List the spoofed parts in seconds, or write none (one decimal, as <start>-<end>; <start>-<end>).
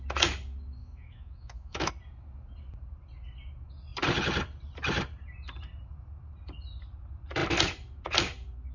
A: 0.8-1.9